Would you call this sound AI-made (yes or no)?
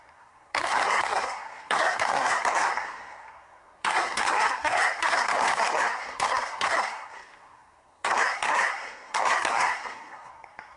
yes